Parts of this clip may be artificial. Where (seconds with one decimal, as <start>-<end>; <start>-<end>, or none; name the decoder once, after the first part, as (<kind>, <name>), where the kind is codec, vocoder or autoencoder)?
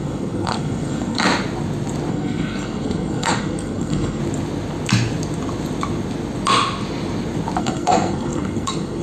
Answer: 0.0-1.2 (codec, SNAC); 2.1-4.2; 7.6-9.0